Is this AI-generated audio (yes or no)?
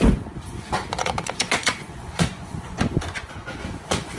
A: yes